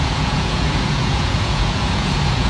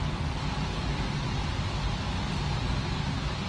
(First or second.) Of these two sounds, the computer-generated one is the first